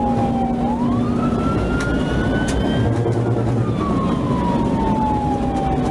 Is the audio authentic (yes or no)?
yes